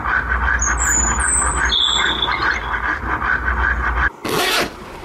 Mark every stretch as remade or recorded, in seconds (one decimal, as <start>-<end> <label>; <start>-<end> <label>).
0.0-5.0 recorded

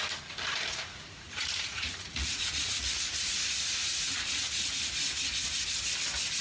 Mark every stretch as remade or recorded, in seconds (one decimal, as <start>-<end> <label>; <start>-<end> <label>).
0.0-0.7 recorded; 0.7-3.4 remade; 3.4-3.8 recorded; 3.8-4.7 remade; 4.7-6.4 recorded

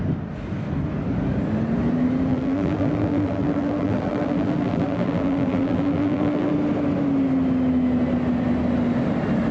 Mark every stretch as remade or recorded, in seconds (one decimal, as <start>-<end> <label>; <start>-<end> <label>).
0.0-2.3 recorded; 2.3-6.5 remade; 6.5-9.5 recorded